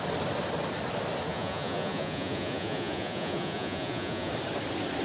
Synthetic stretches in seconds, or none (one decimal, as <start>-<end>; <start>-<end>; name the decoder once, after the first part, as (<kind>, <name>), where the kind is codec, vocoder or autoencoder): 1.3-4.3 (vocoder, Vocos)